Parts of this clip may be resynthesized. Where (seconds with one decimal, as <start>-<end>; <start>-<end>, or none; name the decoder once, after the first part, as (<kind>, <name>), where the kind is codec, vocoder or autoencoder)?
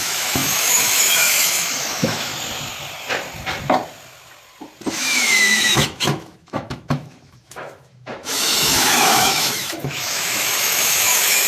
0.0-2.3 (autoencoder, DAC-VAE); 4.9-11.5